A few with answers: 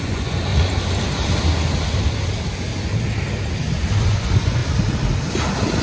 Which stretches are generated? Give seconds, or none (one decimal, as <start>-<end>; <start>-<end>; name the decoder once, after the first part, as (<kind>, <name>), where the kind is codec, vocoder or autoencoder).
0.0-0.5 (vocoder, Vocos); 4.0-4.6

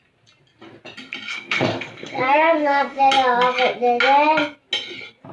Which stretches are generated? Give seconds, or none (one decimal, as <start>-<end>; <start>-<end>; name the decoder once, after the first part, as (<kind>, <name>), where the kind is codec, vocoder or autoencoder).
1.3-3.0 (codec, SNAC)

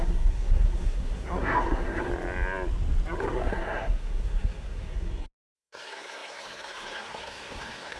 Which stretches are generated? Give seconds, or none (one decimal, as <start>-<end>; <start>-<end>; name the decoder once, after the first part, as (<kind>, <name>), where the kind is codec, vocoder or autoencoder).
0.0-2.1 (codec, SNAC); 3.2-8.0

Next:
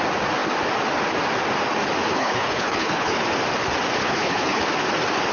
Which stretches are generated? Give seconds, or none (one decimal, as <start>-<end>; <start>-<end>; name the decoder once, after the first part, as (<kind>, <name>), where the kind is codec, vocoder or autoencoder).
2.1-3.2 (codec, HILCodec); 4.0-4.6

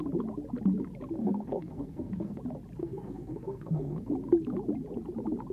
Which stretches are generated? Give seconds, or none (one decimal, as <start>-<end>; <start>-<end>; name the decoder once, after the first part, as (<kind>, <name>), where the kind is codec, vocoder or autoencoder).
1.2-2.4 (codec, SNAC); 2.8-4.1